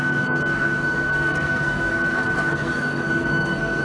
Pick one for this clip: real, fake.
fake